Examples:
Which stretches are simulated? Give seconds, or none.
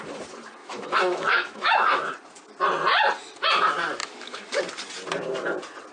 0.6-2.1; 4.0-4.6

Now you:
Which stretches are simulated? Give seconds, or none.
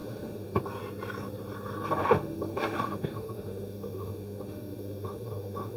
0.0-0.6; 2.0-5.8